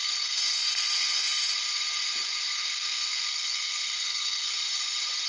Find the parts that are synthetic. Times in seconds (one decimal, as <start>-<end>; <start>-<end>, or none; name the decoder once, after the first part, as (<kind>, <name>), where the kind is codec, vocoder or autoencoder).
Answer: 0.0-1.4 (codec, SNAC); 2.5-4.5